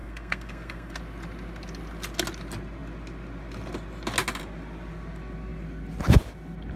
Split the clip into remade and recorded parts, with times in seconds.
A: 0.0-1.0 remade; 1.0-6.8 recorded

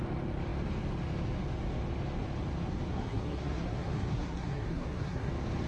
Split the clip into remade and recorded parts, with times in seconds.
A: 0.0-2.9 recorded; 2.9-5.3 remade; 5.3-5.7 recorded